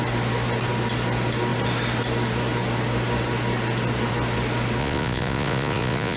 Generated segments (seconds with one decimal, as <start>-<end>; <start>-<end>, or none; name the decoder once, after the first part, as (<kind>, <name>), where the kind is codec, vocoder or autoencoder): 4.8-6.2 (vocoder, Vocos)